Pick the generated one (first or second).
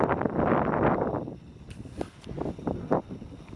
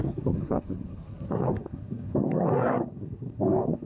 second